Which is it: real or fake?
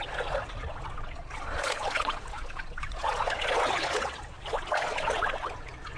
fake